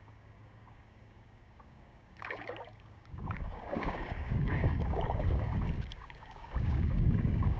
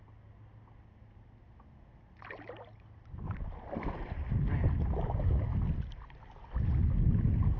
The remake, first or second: first